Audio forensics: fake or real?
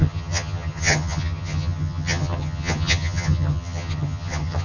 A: fake